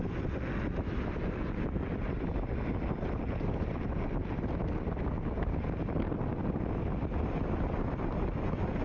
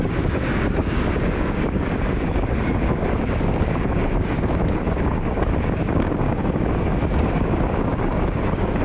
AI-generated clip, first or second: second